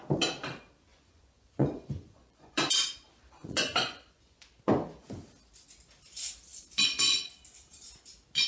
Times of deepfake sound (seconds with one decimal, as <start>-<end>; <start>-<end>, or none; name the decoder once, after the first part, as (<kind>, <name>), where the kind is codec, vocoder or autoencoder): 0.9-2.5 (vocoder, Vocos); 3.4-4.4